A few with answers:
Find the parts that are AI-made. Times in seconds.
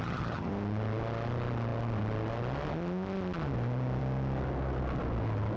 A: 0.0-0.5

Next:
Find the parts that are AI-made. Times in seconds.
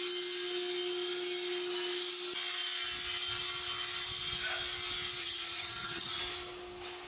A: 5.2-6.2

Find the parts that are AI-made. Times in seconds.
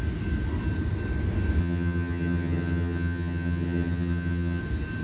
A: 1.6-4.6